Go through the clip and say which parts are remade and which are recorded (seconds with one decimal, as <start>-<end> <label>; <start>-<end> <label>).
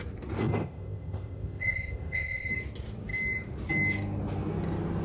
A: 0.0-0.4 recorded; 0.4-2.5 remade; 2.5-5.0 recorded